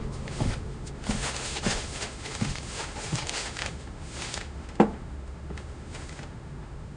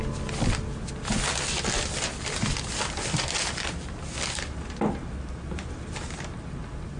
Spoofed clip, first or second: first